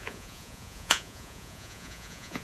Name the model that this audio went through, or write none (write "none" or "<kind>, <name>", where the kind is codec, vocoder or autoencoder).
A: vocoder, Vocos